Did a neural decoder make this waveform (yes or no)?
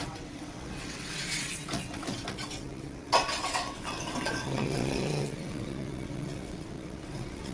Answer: yes